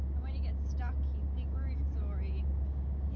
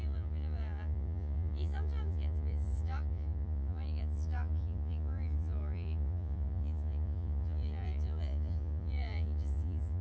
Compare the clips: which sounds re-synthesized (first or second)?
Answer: second